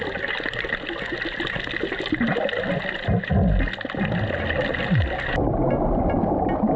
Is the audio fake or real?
real